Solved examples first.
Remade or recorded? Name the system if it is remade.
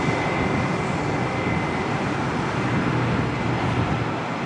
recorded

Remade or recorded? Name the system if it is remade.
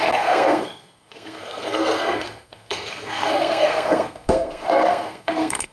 remade, codec, SNAC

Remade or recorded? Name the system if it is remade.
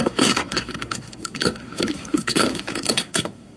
remade, codec, SNAC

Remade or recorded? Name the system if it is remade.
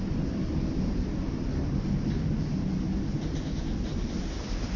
recorded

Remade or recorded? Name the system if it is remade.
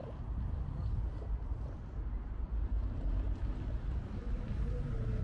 recorded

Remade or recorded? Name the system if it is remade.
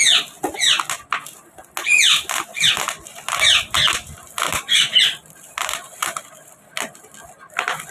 recorded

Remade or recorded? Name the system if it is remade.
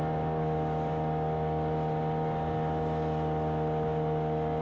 recorded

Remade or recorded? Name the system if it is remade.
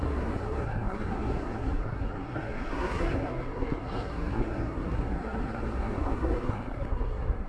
remade, codec, SNAC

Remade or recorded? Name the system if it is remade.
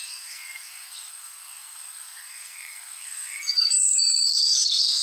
remade, codec, SNAC